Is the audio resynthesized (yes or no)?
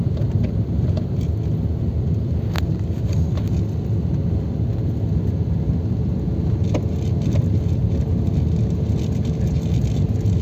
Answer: no